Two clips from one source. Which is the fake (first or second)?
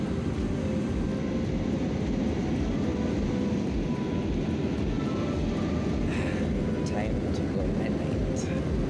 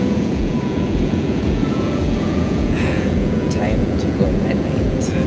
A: second